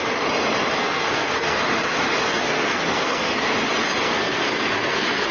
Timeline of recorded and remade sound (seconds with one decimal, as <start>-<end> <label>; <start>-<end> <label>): 0.0-0.8 recorded; 0.8-1.6 remade; 1.6-2.3 recorded; 2.3-3.5 remade; 3.5-4.0 recorded; 4.0-5.3 remade